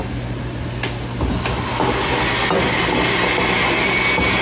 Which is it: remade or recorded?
recorded